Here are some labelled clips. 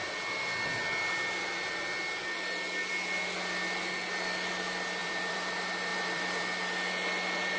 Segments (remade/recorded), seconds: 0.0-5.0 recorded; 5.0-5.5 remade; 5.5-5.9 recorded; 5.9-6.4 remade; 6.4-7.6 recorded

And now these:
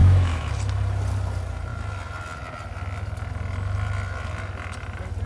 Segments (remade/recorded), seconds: 0.0-0.5 remade; 0.5-5.3 recorded

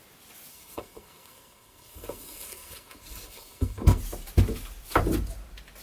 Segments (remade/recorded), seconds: 0.0-0.5 recorded; 0.5-4.0 remade; 4.0-5.8 recorded

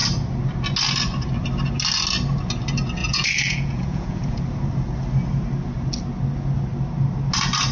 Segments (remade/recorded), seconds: 0.0-3.0 recorded; 3.0-4.4 remade; 4.4-7.7 recorded

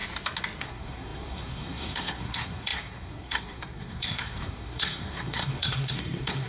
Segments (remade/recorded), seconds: 0.0-0.6 recorded; 0.6-6.5 remade

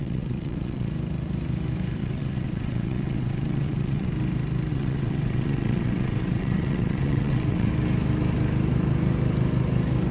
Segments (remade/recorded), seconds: 0.0-0.9 remade; 0.9-2.0 recorded; 2.0-4.1 remade; 4.1-4.7 recorded; 4.7-7.7 remade; 7.7-10.1 recorded